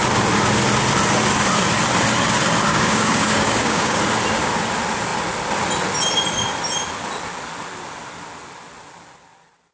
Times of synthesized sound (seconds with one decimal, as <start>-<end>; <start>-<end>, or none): 2.7-4.0